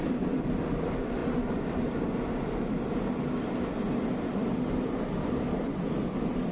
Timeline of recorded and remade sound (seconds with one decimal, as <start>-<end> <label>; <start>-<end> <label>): 0.0-0.6 remade; 0.6-4.4 recorded; 4.4-5.8 remade; 5.8-6.5 recorded